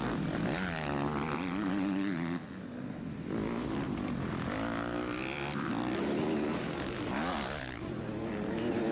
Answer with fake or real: real